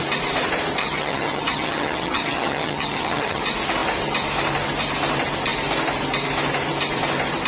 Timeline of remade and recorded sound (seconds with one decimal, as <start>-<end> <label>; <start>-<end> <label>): 0.0-0.8 recorded; 0.8-3.4 remade; 3.4-7.5 recorded